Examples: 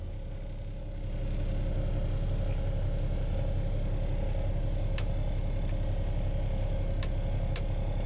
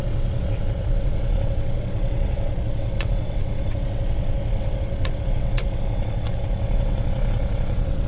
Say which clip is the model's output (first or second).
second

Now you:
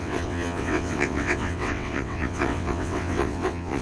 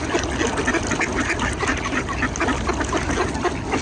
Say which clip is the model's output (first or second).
first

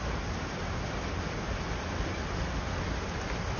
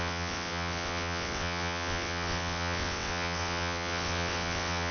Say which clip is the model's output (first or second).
second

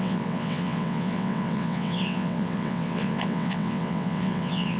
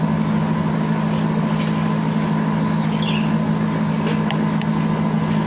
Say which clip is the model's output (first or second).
first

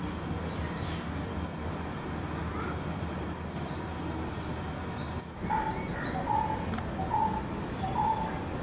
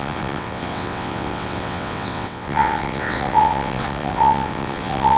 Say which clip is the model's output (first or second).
second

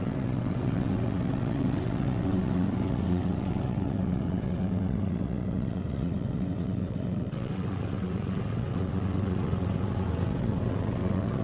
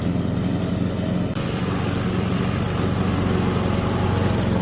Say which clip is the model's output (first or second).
first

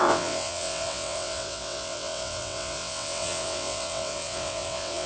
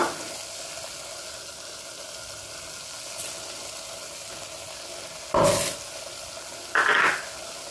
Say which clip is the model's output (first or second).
first